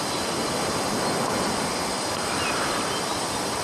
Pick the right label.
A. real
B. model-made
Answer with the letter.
A